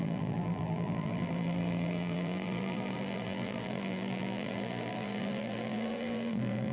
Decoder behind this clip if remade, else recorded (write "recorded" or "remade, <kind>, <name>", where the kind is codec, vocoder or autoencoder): remade, vocoder, BigVGAN v2